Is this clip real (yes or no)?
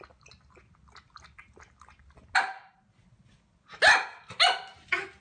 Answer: yes